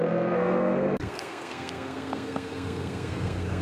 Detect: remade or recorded remade